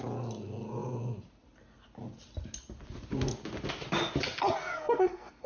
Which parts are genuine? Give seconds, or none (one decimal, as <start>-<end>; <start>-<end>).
0.0-4.6